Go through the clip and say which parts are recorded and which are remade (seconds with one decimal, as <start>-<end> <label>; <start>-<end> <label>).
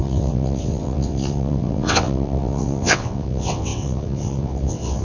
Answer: 0.0-5.0 remade